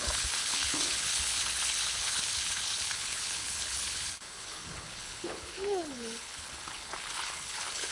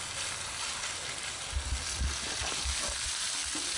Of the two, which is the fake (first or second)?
first